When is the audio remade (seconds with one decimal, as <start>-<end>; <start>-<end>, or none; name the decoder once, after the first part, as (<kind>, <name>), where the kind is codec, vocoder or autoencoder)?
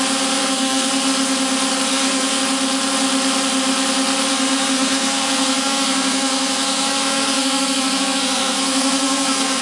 0.4-0.9 (codec, SNAC); 1.9-2.4; 4.3-9.6